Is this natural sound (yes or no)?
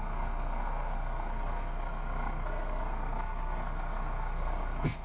no